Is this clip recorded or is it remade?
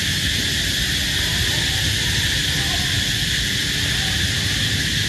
recorded